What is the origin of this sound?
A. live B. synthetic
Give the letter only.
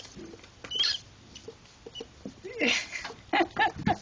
A